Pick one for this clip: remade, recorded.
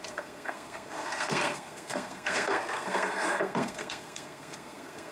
remade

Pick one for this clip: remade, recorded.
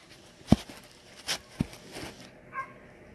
recorded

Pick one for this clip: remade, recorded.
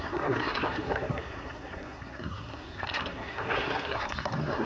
remade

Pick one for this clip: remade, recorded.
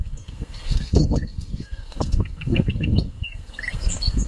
remade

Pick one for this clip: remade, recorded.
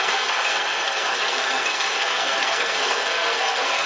remade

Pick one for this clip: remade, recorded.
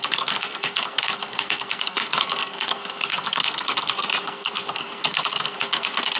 remade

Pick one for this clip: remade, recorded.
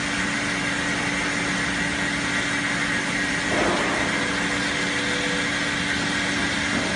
recorded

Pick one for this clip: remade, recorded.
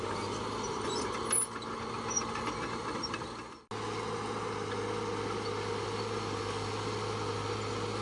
recorded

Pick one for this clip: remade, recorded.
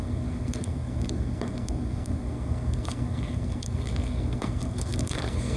remade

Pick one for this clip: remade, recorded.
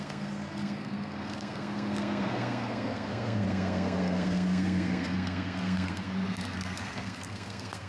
remade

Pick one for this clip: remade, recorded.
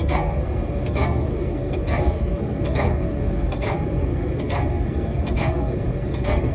remade